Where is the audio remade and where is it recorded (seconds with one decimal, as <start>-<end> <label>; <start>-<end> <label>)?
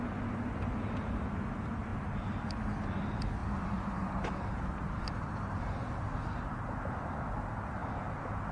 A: 0.0-1.9 recorded; 1.9-2.9 remade; 2.9-3.4 recorded; 3.4-5.7 remade; 5.7-8.5 recorded